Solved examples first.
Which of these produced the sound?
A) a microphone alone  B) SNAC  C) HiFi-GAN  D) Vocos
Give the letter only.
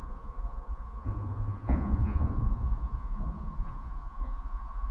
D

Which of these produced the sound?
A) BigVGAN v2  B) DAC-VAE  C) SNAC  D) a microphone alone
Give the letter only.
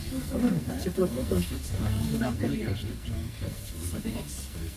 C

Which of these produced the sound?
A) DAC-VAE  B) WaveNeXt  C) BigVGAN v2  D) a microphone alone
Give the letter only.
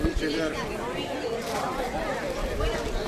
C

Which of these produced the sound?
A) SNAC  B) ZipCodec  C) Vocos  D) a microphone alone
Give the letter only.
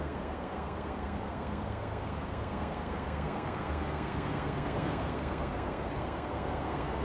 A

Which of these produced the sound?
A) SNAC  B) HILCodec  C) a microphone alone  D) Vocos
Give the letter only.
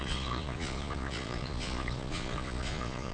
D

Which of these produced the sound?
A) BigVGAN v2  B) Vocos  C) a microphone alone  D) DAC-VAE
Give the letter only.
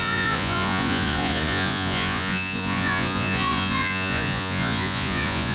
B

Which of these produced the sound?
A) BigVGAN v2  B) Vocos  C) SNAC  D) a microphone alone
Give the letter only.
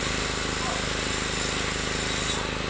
D